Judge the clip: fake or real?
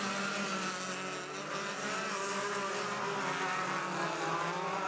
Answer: real